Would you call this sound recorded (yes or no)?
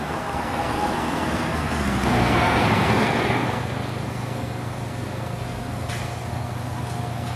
no